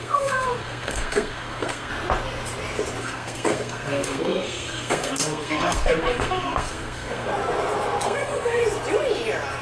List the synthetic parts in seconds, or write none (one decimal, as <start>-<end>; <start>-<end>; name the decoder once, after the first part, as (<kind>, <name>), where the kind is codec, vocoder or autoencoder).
0.0-1.9 (codec, SNAC); 3.0-7.3; 8.0-8.6